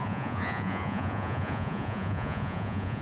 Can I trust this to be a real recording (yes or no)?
no